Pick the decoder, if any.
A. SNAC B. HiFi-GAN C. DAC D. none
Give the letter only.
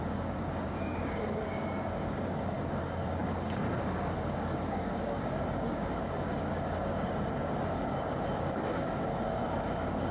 C